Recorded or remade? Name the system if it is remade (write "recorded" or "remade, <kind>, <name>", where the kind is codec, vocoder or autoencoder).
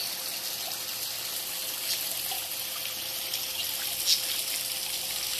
recorded